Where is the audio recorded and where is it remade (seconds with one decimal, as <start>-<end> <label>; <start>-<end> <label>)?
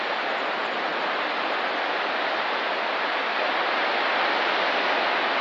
0.0-5.4 recorded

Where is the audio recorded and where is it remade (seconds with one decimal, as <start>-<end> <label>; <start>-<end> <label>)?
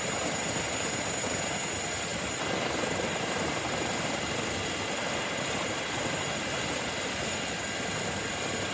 0.0-2.1 recorded; 2.1-6.0 remade; 6.0-8.7 recorded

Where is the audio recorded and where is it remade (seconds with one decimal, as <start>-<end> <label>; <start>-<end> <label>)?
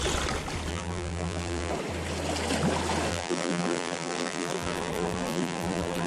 0.0-0.7 recorded; 0.7-1.7 remade; 1.7-3.1 recorded; 3.1-6.1 remade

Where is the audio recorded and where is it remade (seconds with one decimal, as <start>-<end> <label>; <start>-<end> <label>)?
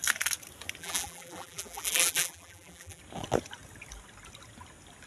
0.0-0.8 recorded; 0.8-3.0 remade; 3.0-5.1 recorded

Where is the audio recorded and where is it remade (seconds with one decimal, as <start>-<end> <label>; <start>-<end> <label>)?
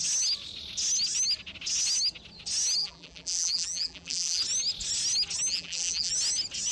0.0-2.8 recorded; 2.8-4.4 remade; 4.4-5.5 recorded; 5.5-6.1 remade; 6.1-6.7 recorded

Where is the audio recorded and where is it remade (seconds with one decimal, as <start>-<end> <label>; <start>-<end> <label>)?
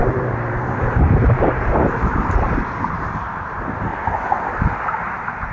0.0-3.9 remade; 3.9-4.6 recorded; 4.6-5.5 remade